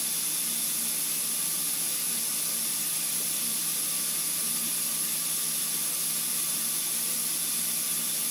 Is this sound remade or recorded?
recorded